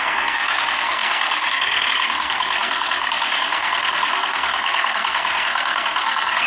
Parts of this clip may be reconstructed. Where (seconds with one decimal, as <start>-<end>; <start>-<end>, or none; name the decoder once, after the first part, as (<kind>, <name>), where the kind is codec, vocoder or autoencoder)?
0.0-6.5 (codec, SNAC)